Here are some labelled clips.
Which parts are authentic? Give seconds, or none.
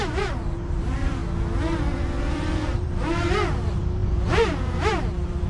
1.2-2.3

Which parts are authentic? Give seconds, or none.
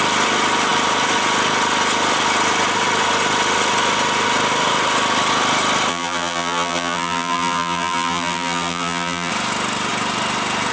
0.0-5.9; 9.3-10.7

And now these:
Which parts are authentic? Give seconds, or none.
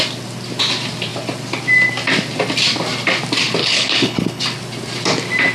0.0-3.6; 4.4-5.5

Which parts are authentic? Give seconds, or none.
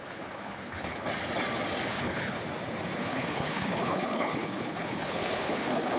1.1-1.9; 2.4-3.0